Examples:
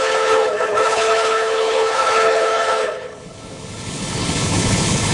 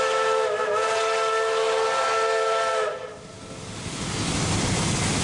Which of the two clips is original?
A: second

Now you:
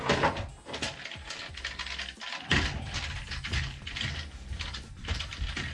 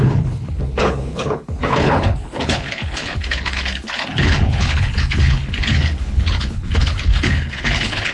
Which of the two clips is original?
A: first